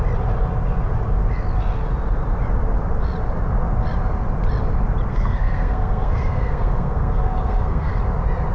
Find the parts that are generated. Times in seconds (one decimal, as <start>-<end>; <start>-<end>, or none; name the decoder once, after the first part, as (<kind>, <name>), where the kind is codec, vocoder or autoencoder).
5.1-7.9 (codec, SNAC)